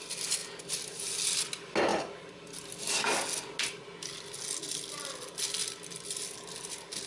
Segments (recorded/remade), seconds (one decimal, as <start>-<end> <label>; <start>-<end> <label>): 0.0-7.1 recorded

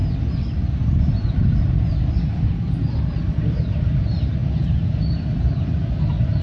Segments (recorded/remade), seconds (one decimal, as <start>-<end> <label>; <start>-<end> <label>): 0.0-6.4 recorded

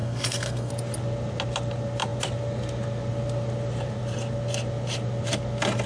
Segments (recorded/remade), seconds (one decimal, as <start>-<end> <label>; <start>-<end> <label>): 0.0-0.7 remade; 0.7-5.9 recorded